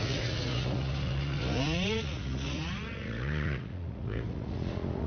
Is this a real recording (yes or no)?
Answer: no